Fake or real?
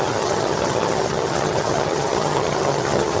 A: fake